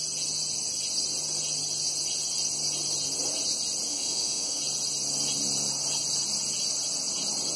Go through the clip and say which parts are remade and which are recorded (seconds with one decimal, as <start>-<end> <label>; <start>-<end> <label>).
0.0-3.9 recorded; 3.9-4.6 remade; 4.6-7.6 recorded